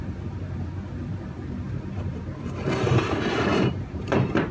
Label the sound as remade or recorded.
remade